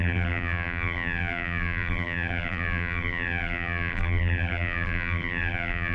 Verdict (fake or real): fake